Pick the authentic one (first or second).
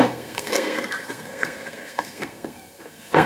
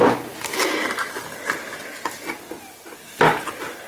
second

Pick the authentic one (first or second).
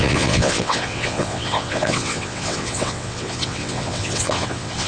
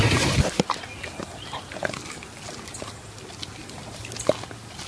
second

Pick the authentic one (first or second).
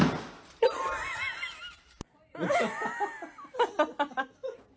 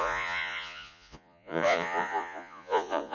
first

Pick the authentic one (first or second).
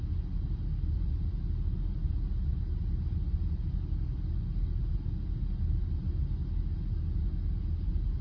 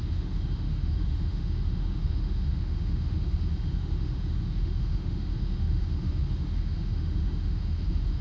first